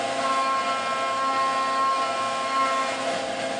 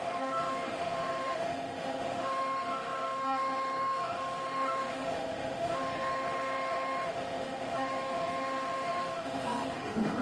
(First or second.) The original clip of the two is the first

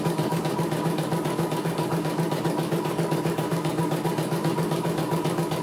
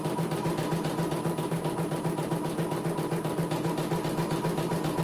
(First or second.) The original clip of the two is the second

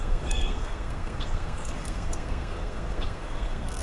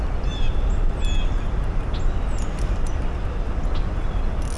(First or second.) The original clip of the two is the second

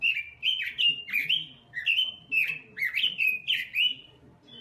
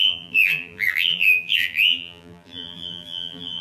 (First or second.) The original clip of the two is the first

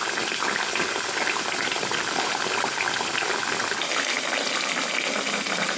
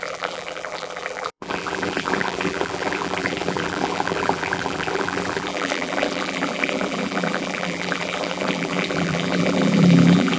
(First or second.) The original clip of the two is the first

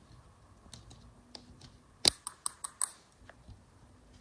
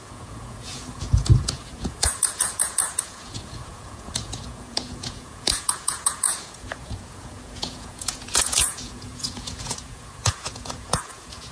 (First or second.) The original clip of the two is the first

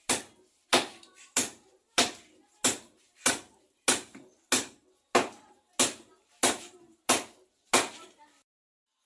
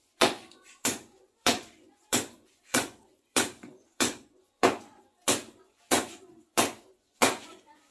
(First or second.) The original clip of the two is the first